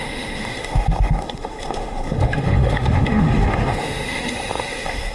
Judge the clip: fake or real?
fake